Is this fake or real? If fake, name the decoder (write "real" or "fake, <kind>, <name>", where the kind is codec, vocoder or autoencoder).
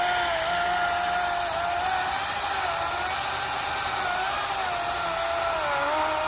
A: real